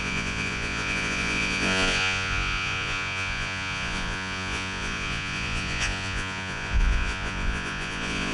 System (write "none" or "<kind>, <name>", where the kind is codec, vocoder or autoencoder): vocoder, Vocos